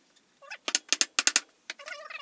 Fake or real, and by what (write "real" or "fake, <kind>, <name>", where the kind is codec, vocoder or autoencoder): real